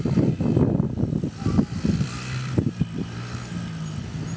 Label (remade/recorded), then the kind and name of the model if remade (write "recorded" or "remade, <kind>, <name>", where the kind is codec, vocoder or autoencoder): recorded